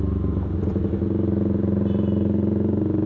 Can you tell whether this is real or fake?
real